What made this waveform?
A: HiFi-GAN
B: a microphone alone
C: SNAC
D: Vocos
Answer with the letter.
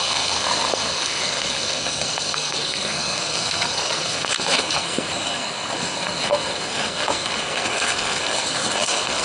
C